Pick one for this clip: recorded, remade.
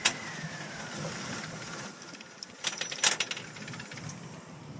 recorded